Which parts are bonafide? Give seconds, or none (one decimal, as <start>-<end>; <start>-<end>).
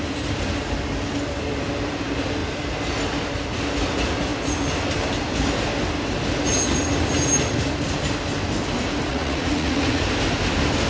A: 0.0-9.1; 10.0-10.9